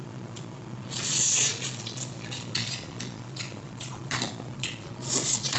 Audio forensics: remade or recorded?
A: remade